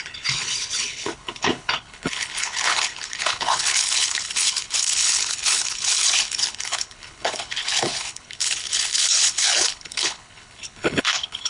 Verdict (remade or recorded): remade